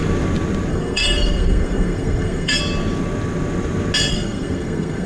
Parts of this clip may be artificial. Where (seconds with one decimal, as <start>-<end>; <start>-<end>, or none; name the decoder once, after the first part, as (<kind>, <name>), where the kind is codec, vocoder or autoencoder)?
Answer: 0.7-2.6 (codec, SNAC); 4.1-5.1